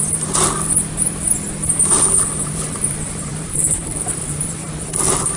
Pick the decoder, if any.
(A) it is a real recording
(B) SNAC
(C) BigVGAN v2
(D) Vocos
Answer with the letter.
A